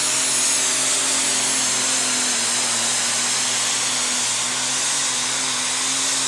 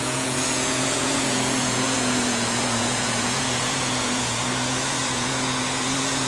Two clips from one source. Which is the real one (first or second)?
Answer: first